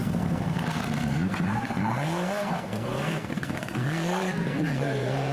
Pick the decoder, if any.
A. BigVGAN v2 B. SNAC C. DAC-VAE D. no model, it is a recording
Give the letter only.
B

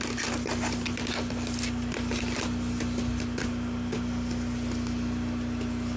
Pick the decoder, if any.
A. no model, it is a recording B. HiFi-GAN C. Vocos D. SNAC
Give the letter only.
A